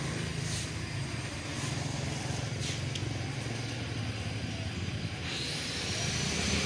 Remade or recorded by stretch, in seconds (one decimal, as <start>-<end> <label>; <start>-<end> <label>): 0.0-6.7 recorded